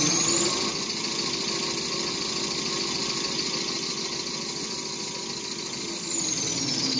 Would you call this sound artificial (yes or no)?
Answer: no